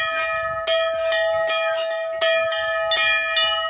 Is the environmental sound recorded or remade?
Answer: recorded